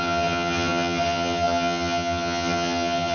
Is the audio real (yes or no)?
no